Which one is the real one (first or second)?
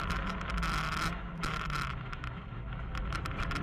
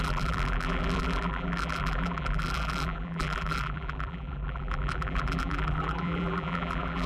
first